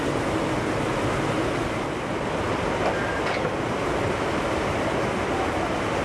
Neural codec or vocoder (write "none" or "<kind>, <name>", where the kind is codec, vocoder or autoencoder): none